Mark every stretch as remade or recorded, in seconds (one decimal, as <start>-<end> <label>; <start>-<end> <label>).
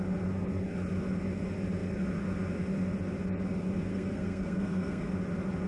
0.0-3.9 recorded; 3.9-5.1 remade; 5.1-5.7 recorded